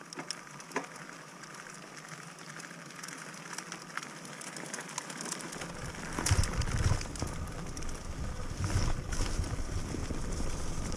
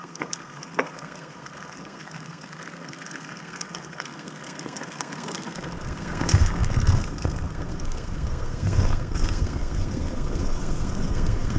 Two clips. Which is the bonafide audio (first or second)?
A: first